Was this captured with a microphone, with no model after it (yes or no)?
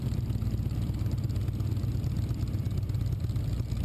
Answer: yes